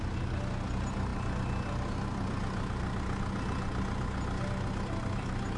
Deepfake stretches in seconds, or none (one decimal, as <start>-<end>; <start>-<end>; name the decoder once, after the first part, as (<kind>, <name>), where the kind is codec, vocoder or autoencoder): none